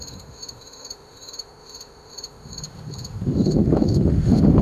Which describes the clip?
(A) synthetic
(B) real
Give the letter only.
A